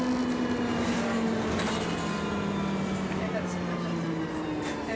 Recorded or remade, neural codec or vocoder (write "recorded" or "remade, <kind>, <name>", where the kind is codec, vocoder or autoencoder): recorded